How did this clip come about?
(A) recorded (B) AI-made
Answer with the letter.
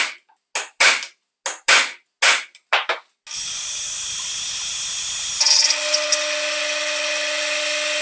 A